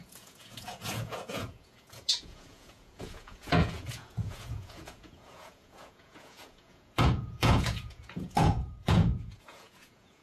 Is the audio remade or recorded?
remade